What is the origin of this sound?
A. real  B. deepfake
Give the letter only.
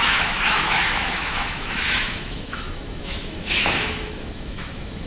B